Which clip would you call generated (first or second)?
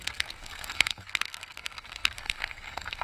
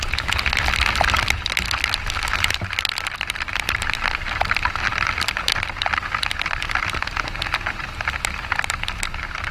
first